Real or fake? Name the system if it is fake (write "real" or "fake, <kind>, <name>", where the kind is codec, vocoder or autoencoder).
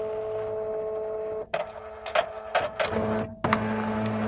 real